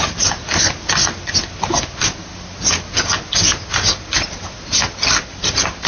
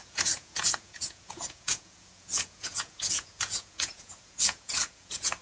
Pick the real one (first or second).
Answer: first